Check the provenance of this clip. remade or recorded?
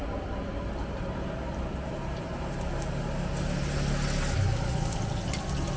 recorded